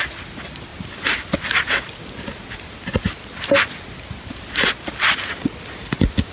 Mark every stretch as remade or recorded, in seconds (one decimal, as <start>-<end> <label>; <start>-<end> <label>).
0.0-6.3 recorded